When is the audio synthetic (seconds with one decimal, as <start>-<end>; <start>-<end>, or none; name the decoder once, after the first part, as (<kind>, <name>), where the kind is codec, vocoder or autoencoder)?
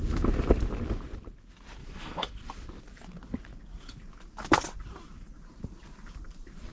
1.8-2.4 (autoencoder, DAC-VAE)